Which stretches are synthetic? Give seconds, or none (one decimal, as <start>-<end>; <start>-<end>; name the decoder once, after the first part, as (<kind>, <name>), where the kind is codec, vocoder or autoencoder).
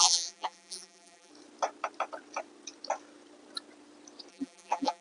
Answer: 0.0-1.3 (vocoder, BigVGAN v2); 4.3-5.0